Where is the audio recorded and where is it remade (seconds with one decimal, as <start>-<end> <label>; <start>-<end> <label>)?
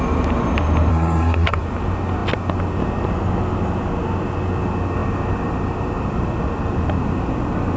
0.0-0.9 recorded; 0.9-1.6 remade; 1.6-7.8 recorded